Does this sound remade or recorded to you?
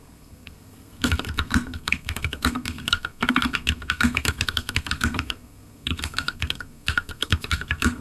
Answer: remade